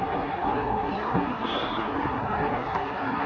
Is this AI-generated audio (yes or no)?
yes